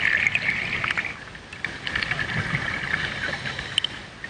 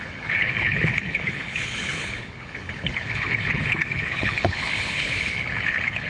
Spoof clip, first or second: second